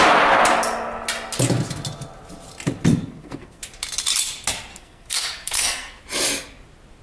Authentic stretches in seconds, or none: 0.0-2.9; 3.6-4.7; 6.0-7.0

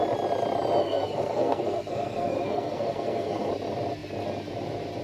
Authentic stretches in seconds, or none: 0.0-0.8; 3.5-5.0

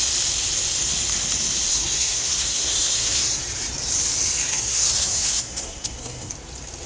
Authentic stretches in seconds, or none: 0.0-1.7; 3.4-4.5; 6.3-6.9

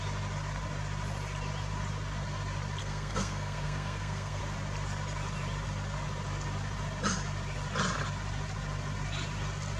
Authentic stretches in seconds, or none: 0.0-2.8; 4.4-9.8

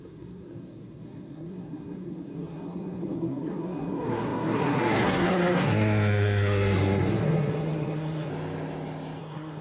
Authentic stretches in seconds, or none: 8.3-9.2

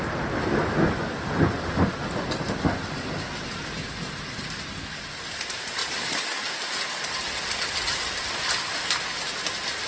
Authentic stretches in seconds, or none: 0.0-9.9

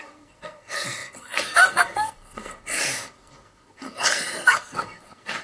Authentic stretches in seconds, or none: none